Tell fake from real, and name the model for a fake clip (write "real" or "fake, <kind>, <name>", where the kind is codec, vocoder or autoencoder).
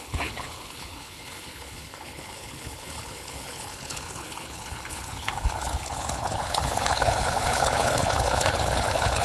fake, codec, HILCodec